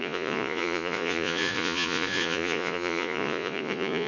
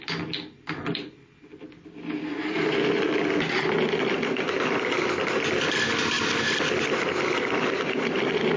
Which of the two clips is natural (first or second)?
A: second